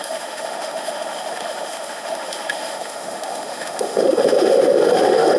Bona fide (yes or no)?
no